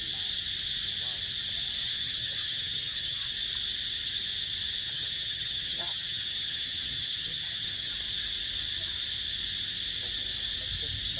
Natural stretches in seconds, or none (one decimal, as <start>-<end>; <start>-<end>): 0.0-1.8; 3.3-4.8; 7.9-11.2